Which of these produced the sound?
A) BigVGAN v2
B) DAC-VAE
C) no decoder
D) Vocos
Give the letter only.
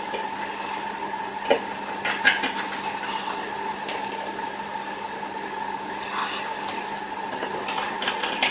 C